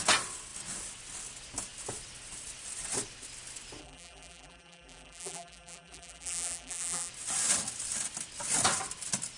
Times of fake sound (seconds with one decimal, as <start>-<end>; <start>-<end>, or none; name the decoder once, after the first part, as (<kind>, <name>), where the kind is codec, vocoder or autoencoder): 3.8-7.1 (vocoder, BigVGAN v2)